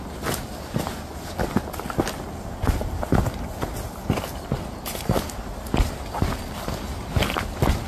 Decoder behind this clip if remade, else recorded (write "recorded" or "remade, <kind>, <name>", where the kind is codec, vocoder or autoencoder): recorded